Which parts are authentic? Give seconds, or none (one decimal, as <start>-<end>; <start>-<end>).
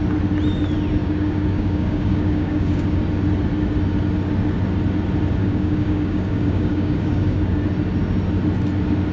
0.0-1.0; 3.0-5.4; 7.6-9.1